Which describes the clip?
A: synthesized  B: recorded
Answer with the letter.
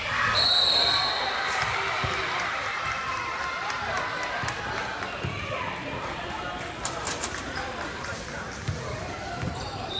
A